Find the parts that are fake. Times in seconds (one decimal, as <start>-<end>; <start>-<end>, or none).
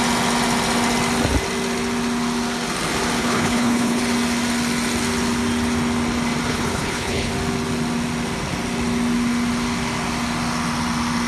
3.2-4.0; 6.5-7.3